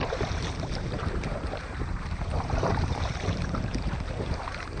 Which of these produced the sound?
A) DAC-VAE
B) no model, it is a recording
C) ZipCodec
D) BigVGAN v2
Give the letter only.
D